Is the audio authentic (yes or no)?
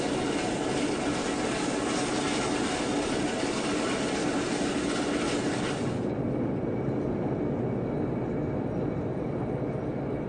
yes